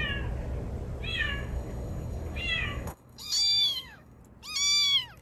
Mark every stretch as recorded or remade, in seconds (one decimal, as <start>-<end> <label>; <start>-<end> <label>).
0.0-1.1 recorded; 1.1-4.2 remade; 4.2-5.2 recorded